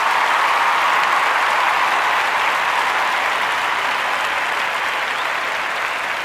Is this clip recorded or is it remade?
recorded